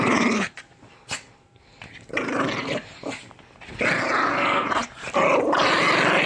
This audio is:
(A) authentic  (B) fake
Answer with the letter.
A